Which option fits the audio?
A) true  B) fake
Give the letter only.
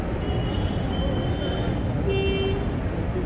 A